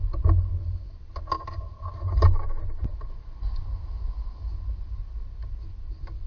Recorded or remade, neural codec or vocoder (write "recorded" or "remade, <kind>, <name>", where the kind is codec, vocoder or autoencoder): recorded